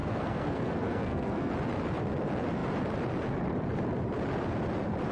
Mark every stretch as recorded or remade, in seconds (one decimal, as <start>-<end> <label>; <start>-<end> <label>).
0.0-1.5 remade; 1.5-5.1 recorded